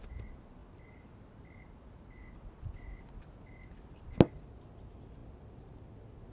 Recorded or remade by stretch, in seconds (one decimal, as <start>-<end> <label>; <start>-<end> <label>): 0.0-6.3 recorded